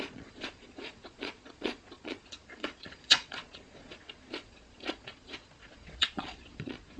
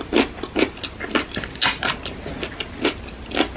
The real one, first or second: second